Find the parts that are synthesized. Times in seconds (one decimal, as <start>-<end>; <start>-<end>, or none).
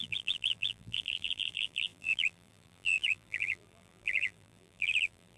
0.0-5.4